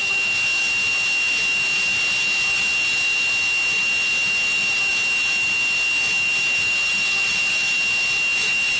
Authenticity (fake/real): fake